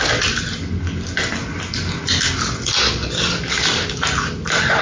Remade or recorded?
recorded